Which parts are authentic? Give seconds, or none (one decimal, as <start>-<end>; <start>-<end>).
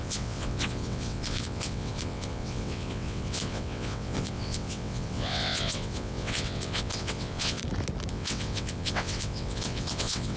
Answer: 7.6-8.1